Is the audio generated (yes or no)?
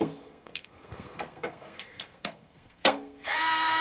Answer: yes